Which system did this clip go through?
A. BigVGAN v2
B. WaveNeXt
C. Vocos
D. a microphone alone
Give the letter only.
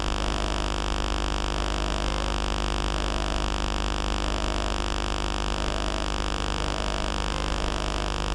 D